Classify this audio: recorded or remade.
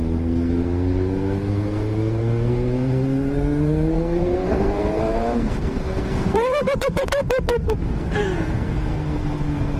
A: remade